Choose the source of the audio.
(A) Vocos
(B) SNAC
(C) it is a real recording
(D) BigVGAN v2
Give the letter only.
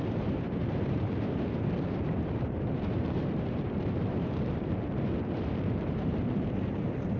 D